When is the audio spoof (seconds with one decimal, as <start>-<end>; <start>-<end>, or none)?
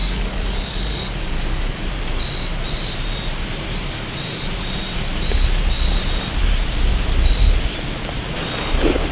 0.0-1.9